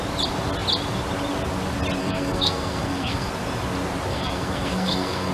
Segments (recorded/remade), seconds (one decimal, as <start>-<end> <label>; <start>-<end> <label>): 0.0-2.0 recorded; 2.0-3.3 remade; 3.3-4.1 recorded; 4.1-5.3 remade